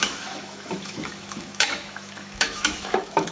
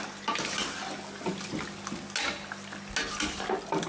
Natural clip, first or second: second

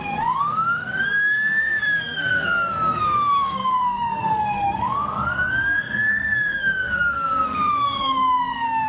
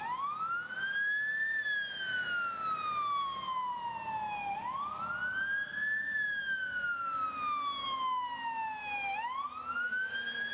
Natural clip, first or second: second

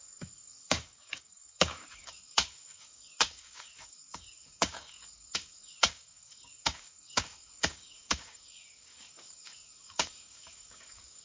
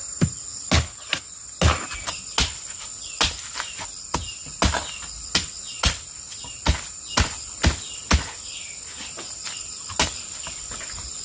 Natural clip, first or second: second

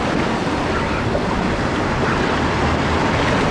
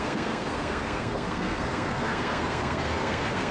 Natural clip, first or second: first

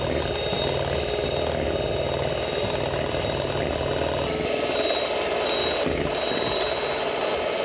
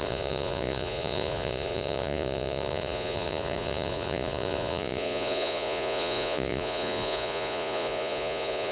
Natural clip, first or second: first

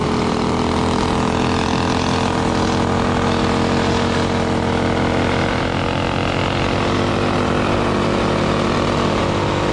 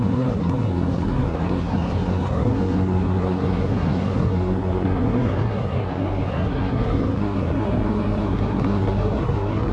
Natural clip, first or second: first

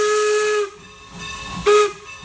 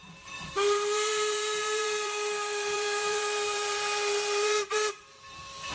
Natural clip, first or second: first